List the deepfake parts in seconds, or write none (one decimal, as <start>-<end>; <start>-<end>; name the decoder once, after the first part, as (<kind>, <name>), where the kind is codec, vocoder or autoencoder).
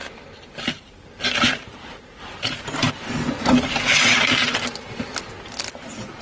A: 0.0-2.9 (vocoder, BigVGAN v2)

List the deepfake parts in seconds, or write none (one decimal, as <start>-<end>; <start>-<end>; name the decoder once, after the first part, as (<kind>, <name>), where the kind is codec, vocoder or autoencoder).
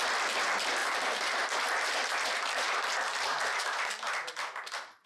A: 0.8-3.9 (vocoder, BigVGAN v2)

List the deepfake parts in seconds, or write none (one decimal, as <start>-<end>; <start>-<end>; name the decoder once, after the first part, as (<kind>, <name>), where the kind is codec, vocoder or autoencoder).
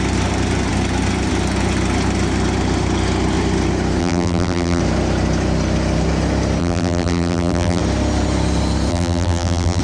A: 4.0-4.8 (vocoder, BigVGAN v2); 6.6-7.8; 8.9-9.8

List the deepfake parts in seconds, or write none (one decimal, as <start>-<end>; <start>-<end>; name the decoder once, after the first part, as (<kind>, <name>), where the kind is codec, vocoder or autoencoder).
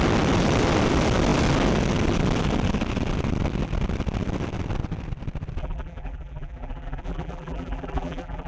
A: 5.6-8.5 (vocoder, BigVGAN v2)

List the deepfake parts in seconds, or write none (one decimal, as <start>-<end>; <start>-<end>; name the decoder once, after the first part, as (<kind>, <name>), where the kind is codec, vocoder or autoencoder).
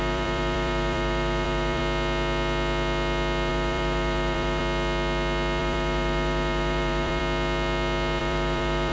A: 0.0-1.8 (vocoder, BigVGAN v2); 3.5-4.6; 5.6-7.2; 8.2-8.9